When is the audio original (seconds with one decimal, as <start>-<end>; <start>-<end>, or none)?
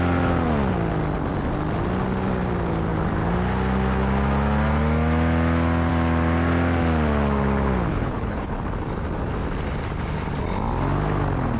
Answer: 0.0-7.9; 8.5-11.6